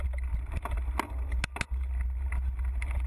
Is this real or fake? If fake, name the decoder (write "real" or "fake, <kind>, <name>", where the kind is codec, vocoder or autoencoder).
real